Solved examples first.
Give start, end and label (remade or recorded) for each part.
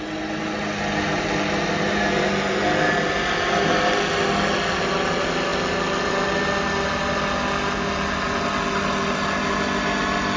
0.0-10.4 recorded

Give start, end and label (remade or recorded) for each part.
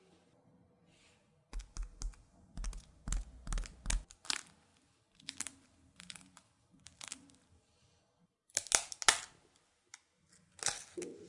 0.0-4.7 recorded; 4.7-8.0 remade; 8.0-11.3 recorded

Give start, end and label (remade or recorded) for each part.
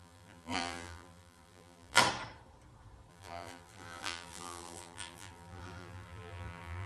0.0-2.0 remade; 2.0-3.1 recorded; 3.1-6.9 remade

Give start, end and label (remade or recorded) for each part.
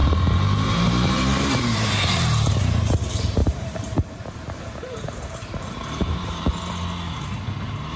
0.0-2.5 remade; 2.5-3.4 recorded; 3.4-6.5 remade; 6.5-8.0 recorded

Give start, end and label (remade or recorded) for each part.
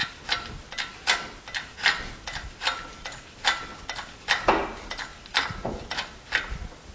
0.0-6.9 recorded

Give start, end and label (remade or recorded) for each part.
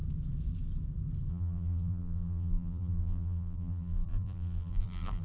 0.0-1.3 recorded; 1.3-5.2 remade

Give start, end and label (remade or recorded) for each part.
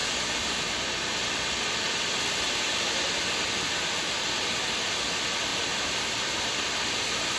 0.0-1.0 remade; 1.0-5.5 recorded; 5.5-6.4 remade; 6.4-7.4 recorded